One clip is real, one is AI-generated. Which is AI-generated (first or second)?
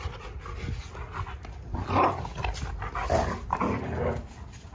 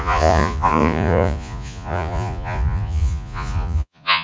second